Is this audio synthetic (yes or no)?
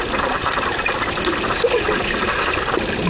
no